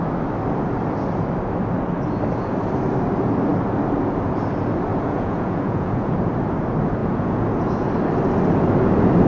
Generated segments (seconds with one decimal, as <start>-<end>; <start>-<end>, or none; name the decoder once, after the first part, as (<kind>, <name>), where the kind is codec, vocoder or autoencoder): 4.9-6.3 (vocoder, Vocos); 7.0-7.9